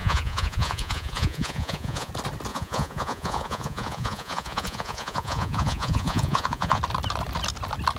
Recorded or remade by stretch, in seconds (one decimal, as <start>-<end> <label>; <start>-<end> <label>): 0.0-2.1 remade; 2.1-2.5 recorded; 2.5-6.8 remade; 6.8-8.0 recorded